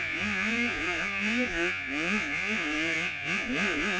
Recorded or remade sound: remade